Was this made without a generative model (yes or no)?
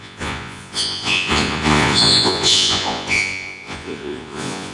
no